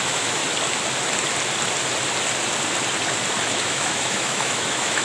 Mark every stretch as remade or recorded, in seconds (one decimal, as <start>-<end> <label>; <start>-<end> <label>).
0.0-0.4 remade; 0.4-3.4 recorded; 3.4-5.0 remade